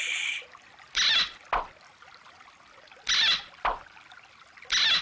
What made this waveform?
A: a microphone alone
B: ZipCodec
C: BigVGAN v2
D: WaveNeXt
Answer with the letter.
A